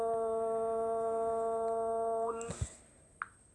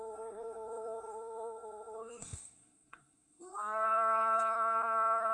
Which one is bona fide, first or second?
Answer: first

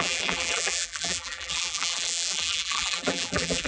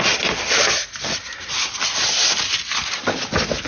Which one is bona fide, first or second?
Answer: second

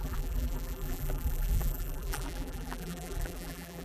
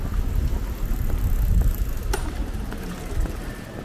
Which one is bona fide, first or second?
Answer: second